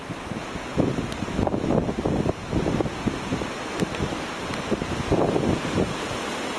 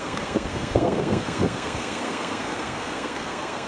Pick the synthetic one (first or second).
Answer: second